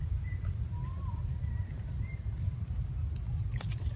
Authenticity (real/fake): real